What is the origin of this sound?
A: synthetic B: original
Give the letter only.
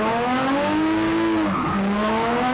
A